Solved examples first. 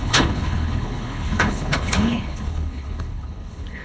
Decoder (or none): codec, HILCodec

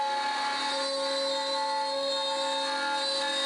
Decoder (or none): none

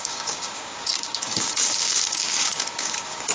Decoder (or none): codec, DAC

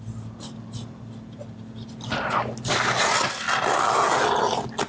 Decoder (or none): none